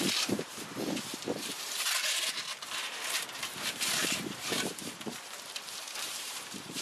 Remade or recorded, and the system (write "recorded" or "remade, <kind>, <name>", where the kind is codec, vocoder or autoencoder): remade, vocoder, BigVGAN v2